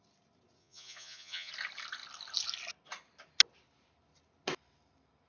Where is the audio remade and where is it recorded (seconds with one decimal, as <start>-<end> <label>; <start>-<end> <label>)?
0.0-0.6 recorded; 0.6-1.5 remade; 1.5-5.3 recorded